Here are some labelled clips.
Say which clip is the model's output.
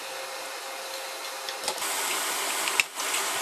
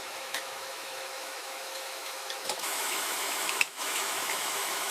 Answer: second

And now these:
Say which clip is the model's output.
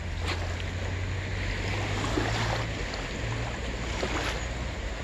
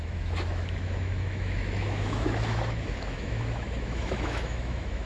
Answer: second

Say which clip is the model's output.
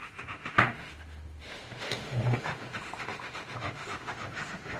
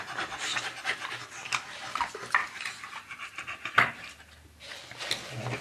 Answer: first